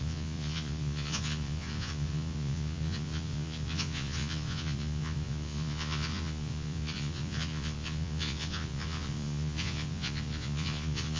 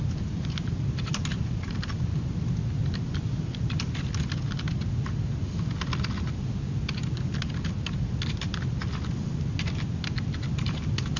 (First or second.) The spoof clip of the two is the first